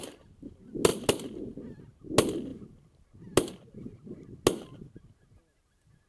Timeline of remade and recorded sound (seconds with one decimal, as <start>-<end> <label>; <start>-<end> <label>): 0.0-6.1 recorded